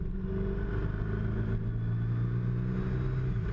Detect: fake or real real